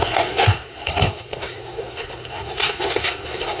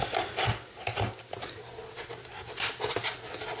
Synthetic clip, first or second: first